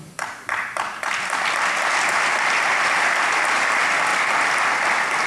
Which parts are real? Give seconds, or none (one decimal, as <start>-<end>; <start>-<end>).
0.0-5.3